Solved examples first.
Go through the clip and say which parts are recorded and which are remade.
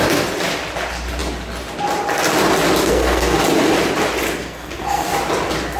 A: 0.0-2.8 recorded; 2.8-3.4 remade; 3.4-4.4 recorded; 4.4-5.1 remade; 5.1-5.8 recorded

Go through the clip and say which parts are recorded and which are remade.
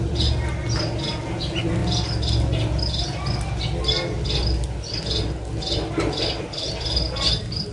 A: 0.0-7.7 recorded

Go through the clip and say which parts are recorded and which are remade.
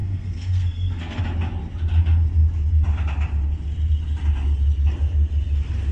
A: 0.0-1.2 remade; 1.2-5.9 recorded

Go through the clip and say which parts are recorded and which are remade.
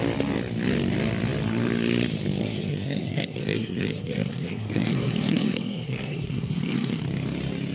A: 0.0-2.4 recorded; 2.4-7.0 remade; 7.0-7.7 recorded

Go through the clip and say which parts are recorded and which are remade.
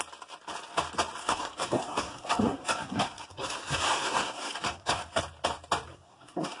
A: 0.0-1.2 recorded; 1.2-5.2 remade; 5.2-5.9 recorded; 5.9-6.6 remade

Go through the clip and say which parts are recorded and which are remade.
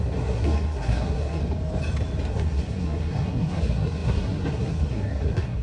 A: 0.0-1.4 remade; 1.4-2.3 recorded; 2.3-5.6 remade